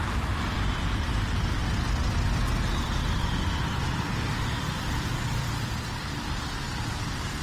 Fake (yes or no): no